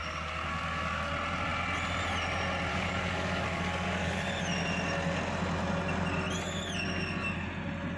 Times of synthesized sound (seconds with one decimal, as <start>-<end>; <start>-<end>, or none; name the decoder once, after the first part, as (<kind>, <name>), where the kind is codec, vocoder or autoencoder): 0.0-1.1 (codec, DAC); 2.7-4.3